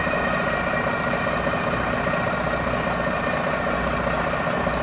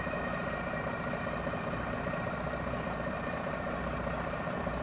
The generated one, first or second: second